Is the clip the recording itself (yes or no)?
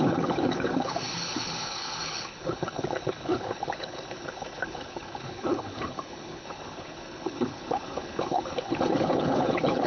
no